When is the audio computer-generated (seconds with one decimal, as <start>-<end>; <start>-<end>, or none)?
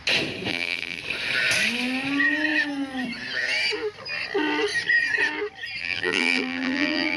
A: 0.5-1.0; 5.8-7.2